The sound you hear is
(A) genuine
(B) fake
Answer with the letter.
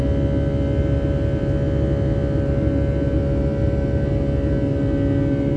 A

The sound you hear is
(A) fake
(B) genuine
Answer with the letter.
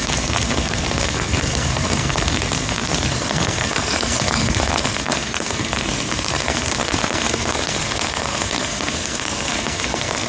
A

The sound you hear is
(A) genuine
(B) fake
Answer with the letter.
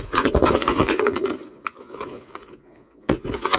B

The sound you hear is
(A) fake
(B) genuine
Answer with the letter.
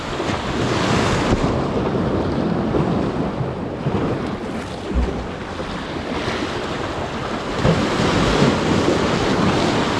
B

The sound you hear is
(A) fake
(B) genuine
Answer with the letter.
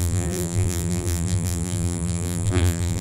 A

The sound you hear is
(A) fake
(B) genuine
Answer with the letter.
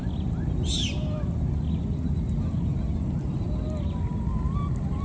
B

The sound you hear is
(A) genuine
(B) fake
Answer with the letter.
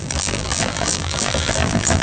B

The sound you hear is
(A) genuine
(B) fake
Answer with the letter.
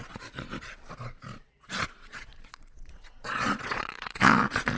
B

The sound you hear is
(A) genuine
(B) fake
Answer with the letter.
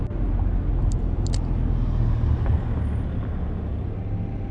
A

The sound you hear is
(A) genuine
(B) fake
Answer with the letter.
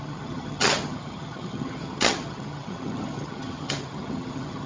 B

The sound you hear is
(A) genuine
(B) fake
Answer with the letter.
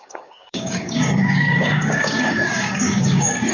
B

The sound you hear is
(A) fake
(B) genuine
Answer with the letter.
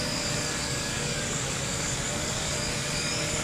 A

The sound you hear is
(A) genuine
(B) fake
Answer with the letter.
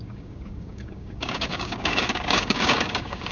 B